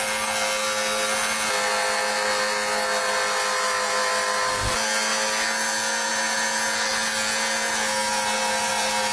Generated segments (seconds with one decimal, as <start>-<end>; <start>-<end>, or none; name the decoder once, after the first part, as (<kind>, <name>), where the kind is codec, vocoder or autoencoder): none